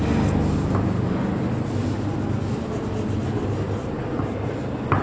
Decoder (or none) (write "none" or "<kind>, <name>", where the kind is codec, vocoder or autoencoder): none